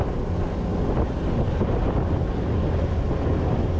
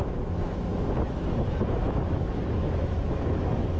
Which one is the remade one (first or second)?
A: second